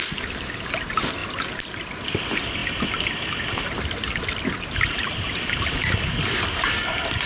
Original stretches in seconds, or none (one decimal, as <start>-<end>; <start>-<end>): 1.2-1.8